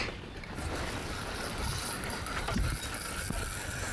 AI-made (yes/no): no